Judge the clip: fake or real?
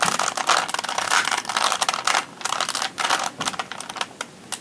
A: real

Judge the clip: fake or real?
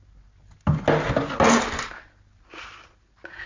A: real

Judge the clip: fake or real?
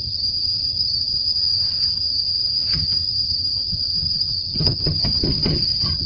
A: fake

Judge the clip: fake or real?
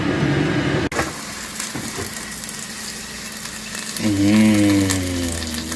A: real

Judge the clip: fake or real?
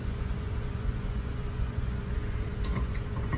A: fake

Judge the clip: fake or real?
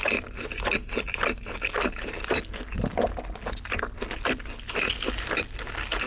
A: real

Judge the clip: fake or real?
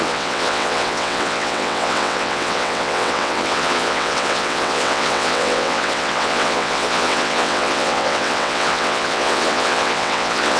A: fake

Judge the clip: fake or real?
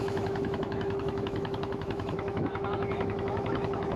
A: fake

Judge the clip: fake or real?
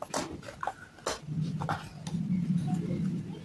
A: real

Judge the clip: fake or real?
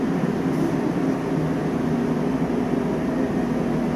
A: real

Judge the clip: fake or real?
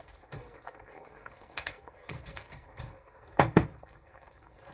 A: fake